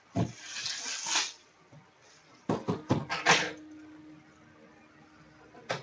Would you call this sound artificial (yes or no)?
no